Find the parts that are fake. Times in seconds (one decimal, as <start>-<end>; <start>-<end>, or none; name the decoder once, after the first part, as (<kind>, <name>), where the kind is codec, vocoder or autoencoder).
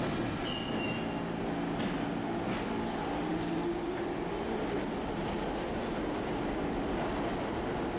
none